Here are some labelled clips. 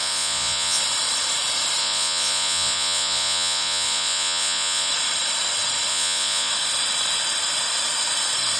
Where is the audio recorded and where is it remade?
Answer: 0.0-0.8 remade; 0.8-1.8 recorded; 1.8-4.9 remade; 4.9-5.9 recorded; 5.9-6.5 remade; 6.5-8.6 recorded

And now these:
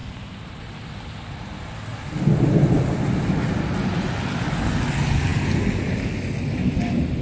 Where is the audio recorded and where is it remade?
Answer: 0.0-7.2 recorded

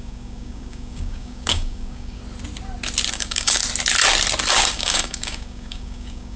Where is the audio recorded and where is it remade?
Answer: 0.0-2.2 remade; 2.2-3.1 recorded; 3.1-3.6 remade; 3.6-4.5 recorded; 4.5-6.4 remade

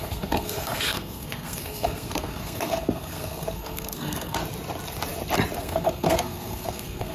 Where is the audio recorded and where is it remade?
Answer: 0.0-4.4 remade; 4.4-5.6 recorded; 5.6-7.1 remade

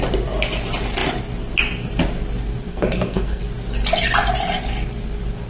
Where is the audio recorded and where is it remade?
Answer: 0.0-2.7 recorded; 2.7-3.4 remade; 3.4-5.5 recorded

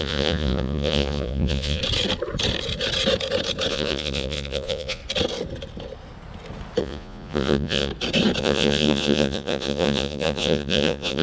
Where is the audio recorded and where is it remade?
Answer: 0.0-1.8 remade; 1.8-3.7 recorded; 3.7-5.0 remade; 5.0-6.8 recorded; 6.8-7.9 remade; 7.9-8.4 recorded; 8.4-11.2 remade

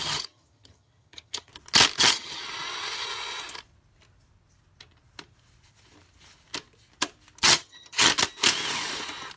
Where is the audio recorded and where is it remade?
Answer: 0.0-1.5 remade; 1.5-2.0 recorded; 2.0-2.4 remade; 2.4-7.4 recorded; 7.4-8.1 remade; 8.1-9.4 recorded

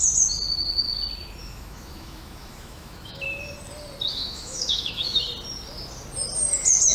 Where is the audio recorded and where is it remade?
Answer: 0.0-1.4 recorded; 1.4-3.2 remade; 3.2-4.1 recorded; 4.1-5.2 remade; 5.2-6.9 recorded